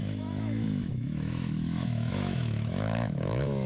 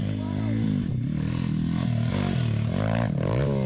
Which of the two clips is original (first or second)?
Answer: second